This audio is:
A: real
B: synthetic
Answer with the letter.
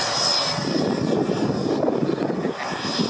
A